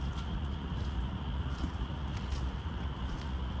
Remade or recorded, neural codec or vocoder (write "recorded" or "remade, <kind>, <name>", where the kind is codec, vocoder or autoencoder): remade, vocoder, Vocos